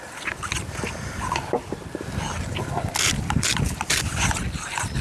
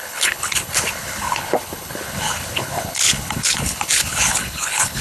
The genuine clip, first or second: first